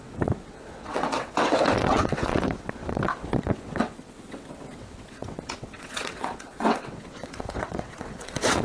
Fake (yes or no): yes